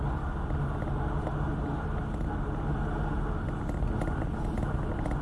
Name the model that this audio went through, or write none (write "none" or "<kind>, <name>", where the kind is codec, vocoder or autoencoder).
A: none